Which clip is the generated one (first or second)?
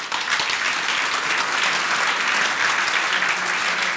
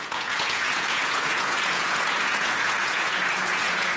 second